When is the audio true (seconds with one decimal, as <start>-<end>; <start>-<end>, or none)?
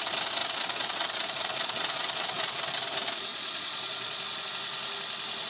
0.0-0.4; 2.6-3.3; 4.5-5.5